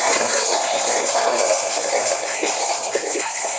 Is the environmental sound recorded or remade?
remade